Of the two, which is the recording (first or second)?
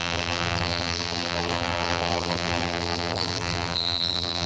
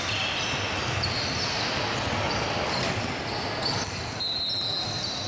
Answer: second